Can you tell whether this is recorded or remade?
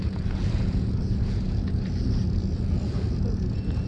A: remade